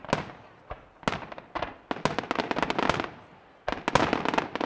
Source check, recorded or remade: recorded